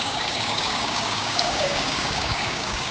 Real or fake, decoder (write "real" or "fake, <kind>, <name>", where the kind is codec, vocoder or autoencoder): fake, codec, DAC